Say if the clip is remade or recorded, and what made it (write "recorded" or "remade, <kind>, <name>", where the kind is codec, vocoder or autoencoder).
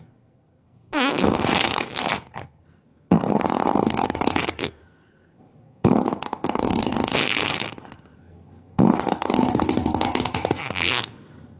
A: remade, codec, SNAC